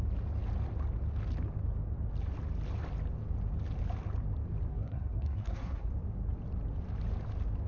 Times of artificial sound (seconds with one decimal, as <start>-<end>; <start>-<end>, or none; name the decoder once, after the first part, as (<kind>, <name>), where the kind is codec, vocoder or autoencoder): 4.7-5.9 (codec, SNAC)